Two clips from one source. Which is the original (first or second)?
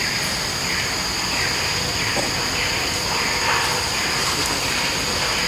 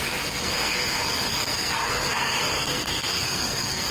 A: first